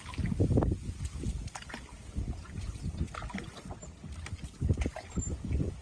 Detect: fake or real real